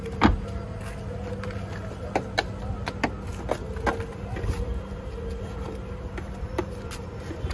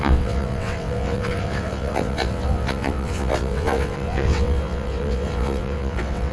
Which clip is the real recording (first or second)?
first